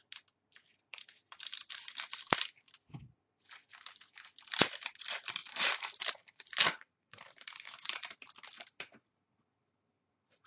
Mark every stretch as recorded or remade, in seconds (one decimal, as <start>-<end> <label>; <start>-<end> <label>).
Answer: 0.0-0.9 recorded; 0.9-1.8 remade; 1.8-5.4 recorded; 5.4-7.2 remade; 7.2-10.5 recorded